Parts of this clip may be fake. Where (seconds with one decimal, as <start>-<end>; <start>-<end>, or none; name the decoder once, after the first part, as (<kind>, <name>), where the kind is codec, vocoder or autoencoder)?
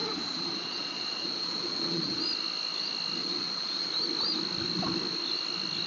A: 0.0-2.2 (vocoder, Vocos); 3.2-3.9